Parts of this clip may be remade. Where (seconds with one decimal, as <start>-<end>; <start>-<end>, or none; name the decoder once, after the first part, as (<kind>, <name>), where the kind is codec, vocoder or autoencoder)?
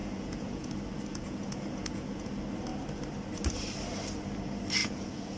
0.0-0.7 (vocoder, Vocos); 1.1-2.3; 4.8-5.4